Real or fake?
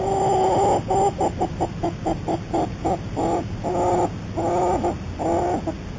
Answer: real